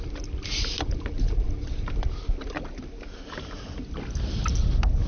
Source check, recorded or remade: recorded